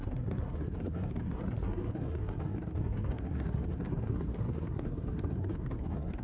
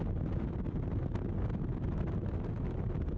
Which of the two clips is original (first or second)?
second